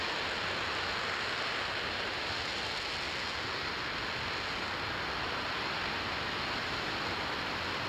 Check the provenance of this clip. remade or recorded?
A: recorded